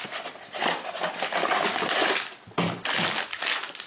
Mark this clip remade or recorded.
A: recorded